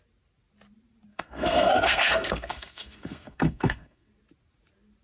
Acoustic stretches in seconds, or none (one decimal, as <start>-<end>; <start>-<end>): 0.0-1.1; 4.1-5.0